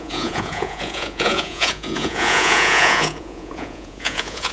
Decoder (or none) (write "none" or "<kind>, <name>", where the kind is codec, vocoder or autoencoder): vocoder, Vocos